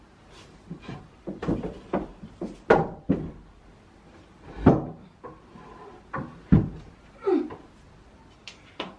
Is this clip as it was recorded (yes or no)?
no